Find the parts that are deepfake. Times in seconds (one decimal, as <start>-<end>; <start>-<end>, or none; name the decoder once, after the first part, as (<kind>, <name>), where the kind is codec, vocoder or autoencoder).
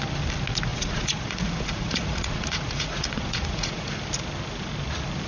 0.7-3.9 (vocoder, Vocos)